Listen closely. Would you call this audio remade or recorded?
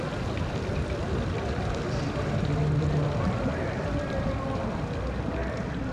recorded